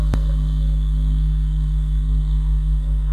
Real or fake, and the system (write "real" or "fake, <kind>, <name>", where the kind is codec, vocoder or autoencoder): fake, codec, SNAC